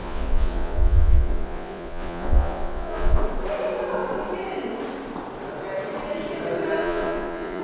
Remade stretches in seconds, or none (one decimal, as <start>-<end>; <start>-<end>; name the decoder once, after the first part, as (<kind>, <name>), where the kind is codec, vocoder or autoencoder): 0.0-3.2 (vocoder, Vocos); 6.8-7.6